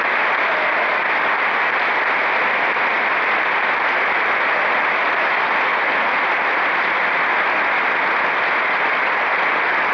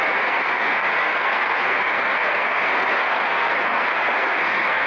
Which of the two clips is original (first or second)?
first